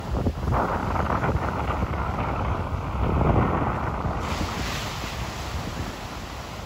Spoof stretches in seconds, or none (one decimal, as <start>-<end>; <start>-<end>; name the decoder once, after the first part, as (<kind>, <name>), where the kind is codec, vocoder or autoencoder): 0.8-1.3 (codec, DAC); 1.8-2.7